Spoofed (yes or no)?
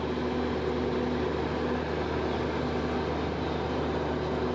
no